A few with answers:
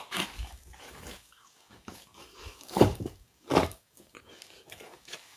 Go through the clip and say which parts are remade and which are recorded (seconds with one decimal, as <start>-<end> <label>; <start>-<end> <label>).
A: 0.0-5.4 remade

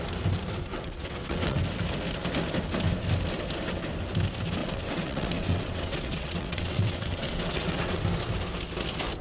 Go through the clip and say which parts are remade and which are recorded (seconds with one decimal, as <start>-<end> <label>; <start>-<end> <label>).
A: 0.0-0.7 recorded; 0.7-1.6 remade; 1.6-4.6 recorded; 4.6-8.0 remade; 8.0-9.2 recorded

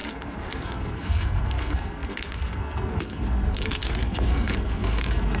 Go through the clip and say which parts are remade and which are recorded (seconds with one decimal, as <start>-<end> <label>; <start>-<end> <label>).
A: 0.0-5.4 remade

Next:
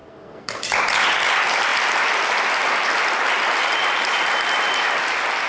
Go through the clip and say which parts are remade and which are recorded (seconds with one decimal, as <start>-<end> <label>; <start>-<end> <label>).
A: 0.0-0.6 remade; 0.6-5.5 recorded